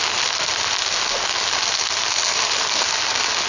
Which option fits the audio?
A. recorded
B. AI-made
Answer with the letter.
A